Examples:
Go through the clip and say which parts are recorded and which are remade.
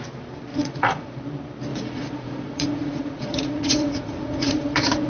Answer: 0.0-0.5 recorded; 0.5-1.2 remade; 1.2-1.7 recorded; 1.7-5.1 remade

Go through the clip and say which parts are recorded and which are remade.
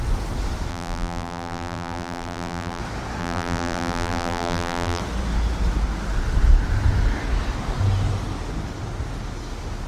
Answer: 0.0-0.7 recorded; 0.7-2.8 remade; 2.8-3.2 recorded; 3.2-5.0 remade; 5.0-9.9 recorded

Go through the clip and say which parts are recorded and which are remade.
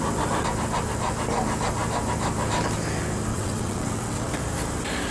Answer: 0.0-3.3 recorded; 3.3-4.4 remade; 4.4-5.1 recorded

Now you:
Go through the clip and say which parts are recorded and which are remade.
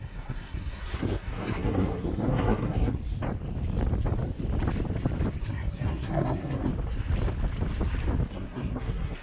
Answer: 0.0-3.0 remade; 3.0-5.4 recorded; 5.4-6.7 remade; 6.7-8.3 recorded; 8.3-9.2 remade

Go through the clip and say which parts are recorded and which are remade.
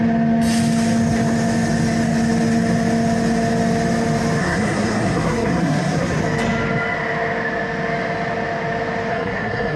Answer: 0.0-4.4 recorded; 4.4-6.2 remade; 6.2-9.1 recorded; 9.1-9.8 remade